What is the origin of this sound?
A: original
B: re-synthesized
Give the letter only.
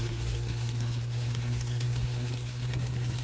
B